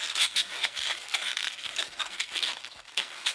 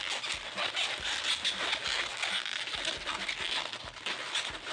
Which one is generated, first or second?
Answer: first